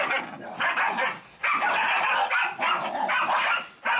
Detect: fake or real real